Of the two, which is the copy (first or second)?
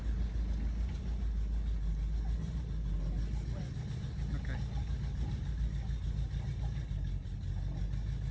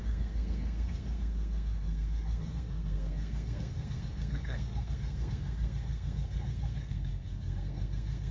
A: second